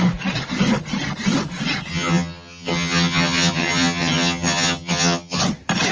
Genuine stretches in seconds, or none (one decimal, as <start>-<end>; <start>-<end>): 0.0-1.9; 5.4-5.9